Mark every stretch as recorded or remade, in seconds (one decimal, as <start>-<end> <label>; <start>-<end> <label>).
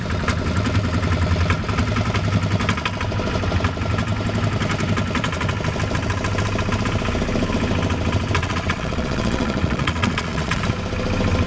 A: 0.0-8.4 recorded; 8.4-10.6 remade; 10.6-11.5 recorded